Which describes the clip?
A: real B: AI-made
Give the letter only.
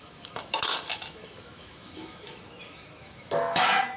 B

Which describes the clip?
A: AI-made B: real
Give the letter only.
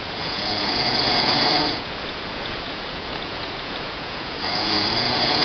A